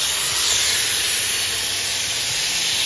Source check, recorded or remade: recorded